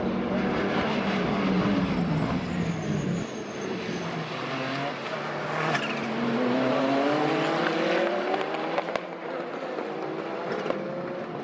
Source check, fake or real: real